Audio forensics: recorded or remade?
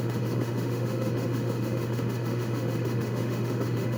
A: remade